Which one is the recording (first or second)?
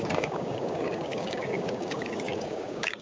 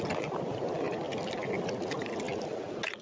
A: second